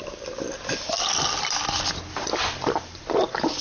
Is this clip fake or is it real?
fake